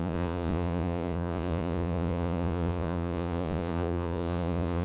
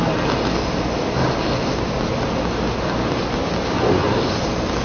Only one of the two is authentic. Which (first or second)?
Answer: second